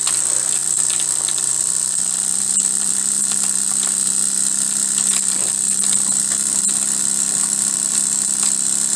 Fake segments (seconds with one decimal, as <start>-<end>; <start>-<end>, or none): 0.0-9.0